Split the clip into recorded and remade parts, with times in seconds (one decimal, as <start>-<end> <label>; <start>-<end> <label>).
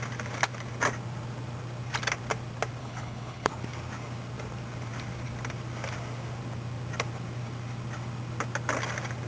0.0-2.8 recorded; 2.8-3.5 remade; 3.5-9.3 recorded